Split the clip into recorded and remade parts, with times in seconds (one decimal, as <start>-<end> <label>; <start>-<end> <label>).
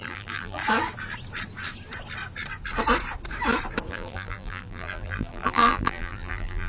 0.0-0.6 remade; 0.6-3.9 recorded; 3.9-6.7 remade